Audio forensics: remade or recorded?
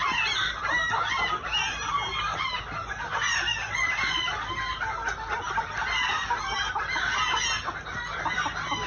recorded